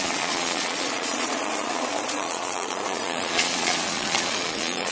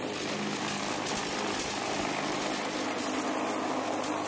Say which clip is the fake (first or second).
first